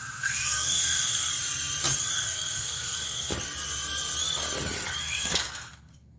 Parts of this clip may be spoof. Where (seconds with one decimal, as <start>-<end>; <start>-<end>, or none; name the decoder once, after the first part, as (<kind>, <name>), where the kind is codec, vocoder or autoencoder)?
0.0-1.3 (codec, SNAC); 2.1-3.3; 5.0-6.2